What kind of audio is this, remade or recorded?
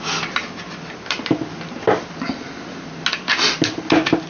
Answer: recorded